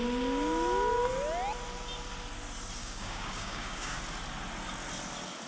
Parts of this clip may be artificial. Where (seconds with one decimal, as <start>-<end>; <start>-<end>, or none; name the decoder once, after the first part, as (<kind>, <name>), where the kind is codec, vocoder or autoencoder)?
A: 2.8-4.0 (codec, DAC)